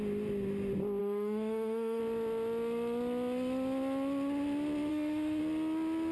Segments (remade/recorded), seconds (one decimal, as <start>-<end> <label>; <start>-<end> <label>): 0.0-1.0 recorded; 1.0-2.0 remade; 2.0-4.9 recorded; 4.9-5.4 remade; 5.4-6.1 recorded